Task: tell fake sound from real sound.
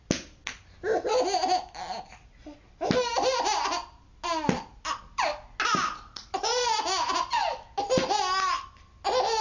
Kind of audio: real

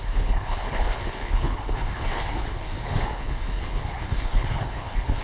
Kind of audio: fake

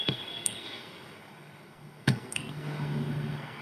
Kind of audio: fake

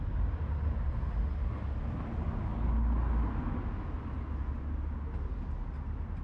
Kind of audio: real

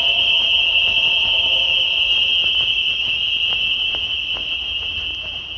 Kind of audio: real